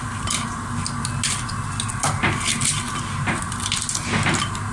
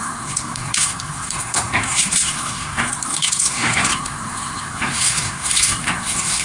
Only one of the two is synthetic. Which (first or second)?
second